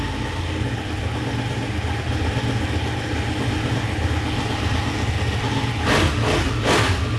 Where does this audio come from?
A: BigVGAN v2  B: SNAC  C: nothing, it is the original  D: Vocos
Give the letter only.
C